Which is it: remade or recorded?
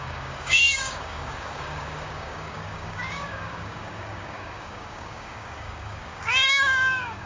remade